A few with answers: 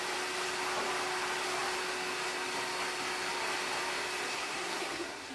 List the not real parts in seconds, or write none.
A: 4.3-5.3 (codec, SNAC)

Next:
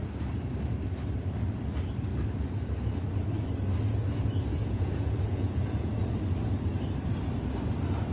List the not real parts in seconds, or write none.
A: 4.6-5.9 (vocoder, Vocos)

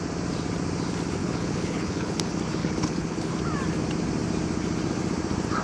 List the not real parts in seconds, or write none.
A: 1.2-2.2 (codec, HILCodec); 2.6-3.3

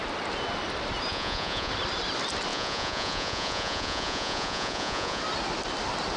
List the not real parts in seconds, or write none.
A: 1.1-1.7 (vocoder, Vocos); 2.5-5.2

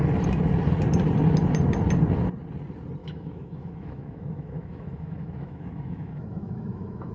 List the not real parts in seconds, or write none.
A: 3.0-7.1 (autoencoder, DAC-VAE)

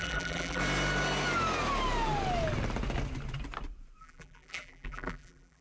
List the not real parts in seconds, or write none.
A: 0.0-0.6 (vocoder, BigVGAN v2); 4.0-5.6

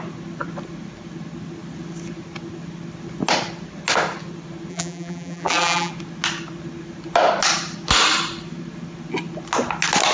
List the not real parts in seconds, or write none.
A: 4.7-5.9 (vocoder, BigVGAN v2)

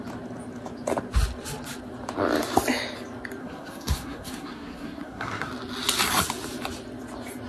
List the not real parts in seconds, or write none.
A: 3.4-5.5 (codec, SNAC)